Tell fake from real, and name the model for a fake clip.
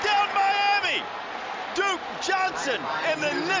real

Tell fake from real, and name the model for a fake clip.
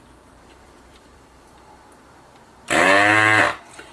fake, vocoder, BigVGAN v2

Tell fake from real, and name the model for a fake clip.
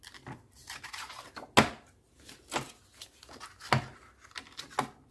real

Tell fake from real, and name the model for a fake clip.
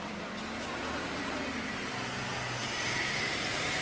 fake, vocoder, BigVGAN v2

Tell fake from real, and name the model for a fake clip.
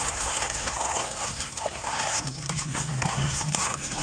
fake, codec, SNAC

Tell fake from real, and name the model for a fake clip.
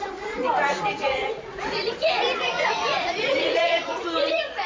fake, vocoder, Vocos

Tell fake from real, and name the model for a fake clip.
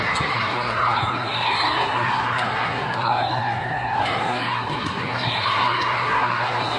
fake, codec, SNAC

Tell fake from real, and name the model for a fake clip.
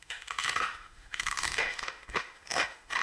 fake, autoencoder, DAC-VAE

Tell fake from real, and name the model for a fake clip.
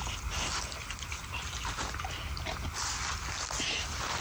real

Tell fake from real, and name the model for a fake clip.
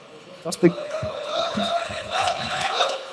fake, codec, HILCodec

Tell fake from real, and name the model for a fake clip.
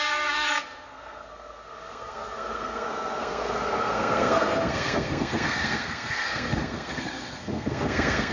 fake, codec, SNAC